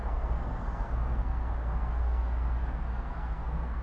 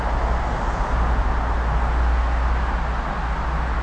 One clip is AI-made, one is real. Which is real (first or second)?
second